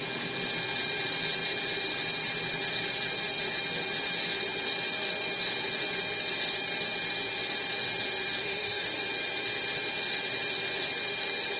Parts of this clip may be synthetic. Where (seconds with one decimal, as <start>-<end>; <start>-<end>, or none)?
8.4-9.0